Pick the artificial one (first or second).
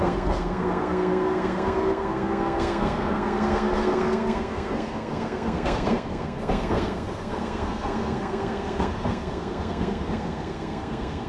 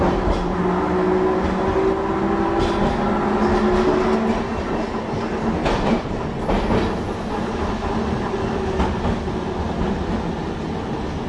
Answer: first